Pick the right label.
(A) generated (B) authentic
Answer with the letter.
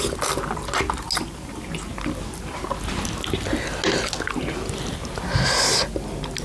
B